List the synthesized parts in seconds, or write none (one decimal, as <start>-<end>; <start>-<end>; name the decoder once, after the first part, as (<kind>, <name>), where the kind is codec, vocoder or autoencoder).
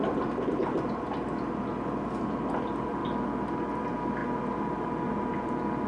none